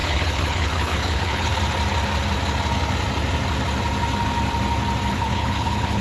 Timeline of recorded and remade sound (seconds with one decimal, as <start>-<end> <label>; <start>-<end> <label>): 0.0-1.5 remade; 1.5-5.1 recorded; 5.1-6.0 remade